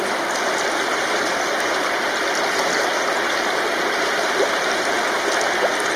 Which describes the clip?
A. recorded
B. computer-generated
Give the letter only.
A